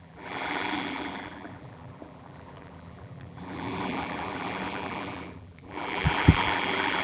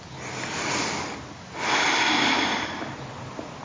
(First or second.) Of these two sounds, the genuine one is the second